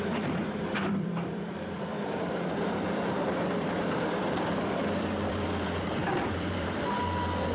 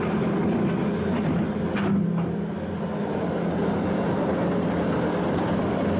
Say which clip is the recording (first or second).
second